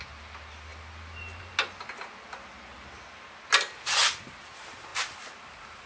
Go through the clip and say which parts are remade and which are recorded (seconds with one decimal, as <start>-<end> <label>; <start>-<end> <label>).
0.0-5.9 recorded

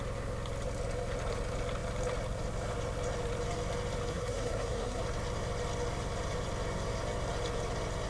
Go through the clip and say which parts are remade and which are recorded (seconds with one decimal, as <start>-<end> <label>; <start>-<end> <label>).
0.0-4.1 recorded; 4.1-5.0 remade; 5.0-8.1 recorded

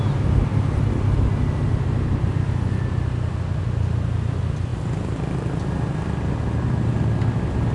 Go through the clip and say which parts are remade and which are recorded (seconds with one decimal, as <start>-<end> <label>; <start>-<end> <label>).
0.0-7.7 recorded

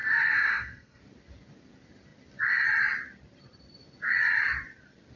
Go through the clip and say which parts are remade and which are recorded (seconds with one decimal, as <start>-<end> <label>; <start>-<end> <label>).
0.0-1.0 remade; 1.0-5.2 recorded

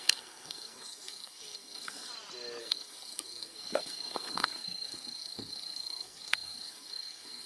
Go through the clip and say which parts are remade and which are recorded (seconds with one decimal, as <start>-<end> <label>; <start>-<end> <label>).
0.0-2.1 remade; 2.1-2.6 recorded; 2.6-7.5 remade

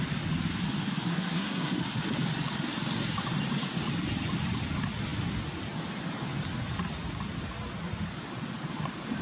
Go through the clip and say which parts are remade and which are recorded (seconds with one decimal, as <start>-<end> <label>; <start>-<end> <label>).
0.0-1.1 recorded; 1.1-1.8 remade; 1.8-9.2 recorded